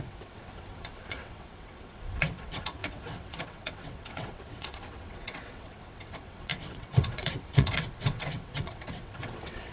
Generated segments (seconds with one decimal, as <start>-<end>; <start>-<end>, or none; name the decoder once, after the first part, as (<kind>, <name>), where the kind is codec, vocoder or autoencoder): 0.0-9.7 (vocoder, WaveNeXt)